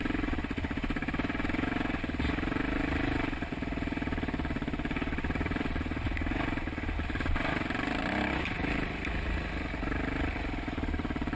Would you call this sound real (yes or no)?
no